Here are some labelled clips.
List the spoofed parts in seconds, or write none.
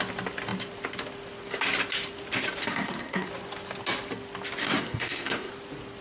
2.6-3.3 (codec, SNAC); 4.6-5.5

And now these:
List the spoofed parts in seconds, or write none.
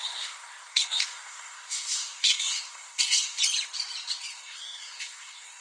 0.0-3.4 (codec, SNAC); 4.3-5.6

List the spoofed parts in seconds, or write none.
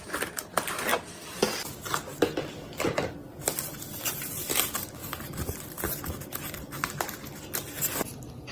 0.0-0.9 (vocoder, BigVGAN v2); 3.3-5.0; 7.8-8.5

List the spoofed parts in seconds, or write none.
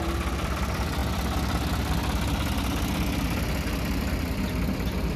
0.0-1.0 (vocoder, BigVGAN v2); 4.0-5.2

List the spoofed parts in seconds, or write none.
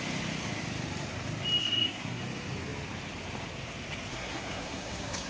1.6-2.2 (codec, SNAC); 4.1-5.3